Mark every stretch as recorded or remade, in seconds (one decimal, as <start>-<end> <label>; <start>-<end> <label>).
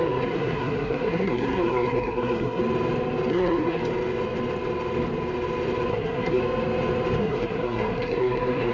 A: 0.0-2.6 remade; 2.6-3.3 recorded; 3.3-3.8 remade; 3.8-5.9 recorded; 5.9-6.4 remade; 6.4-7.2 recorded; 7.2-8.7 remade